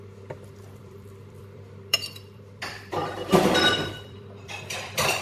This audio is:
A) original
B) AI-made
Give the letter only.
B